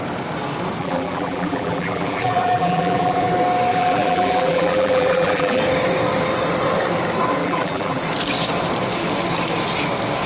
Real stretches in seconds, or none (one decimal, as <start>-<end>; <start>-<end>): 0.0-0.8; 3.3-3.7; 5.6-7.4; 8.0-10.3